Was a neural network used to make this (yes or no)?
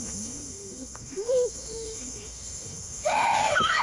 yes